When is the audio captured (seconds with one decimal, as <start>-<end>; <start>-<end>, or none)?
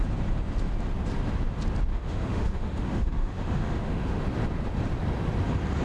0.0-1.9; 4.2-5.8